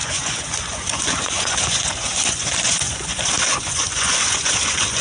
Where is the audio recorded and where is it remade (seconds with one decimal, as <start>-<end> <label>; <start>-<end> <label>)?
0.0-5.0 remade